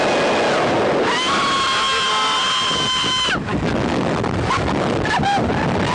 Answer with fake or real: real